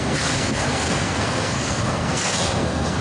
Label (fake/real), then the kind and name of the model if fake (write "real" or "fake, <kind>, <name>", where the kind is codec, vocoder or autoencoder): fake, codec, SNAC